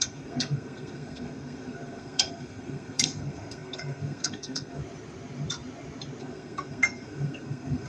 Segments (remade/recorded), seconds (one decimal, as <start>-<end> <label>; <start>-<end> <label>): 0.0-4.8 remade; 4.8-6.2 recorded; 6.2-7.9 remade